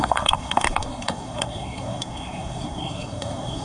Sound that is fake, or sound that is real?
fake